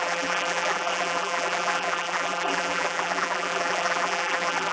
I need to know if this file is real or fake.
fake